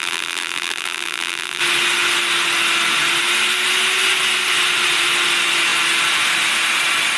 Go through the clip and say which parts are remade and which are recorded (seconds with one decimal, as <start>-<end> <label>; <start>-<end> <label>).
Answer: 0.0-1.6 remade; 1.6-7.2 recorded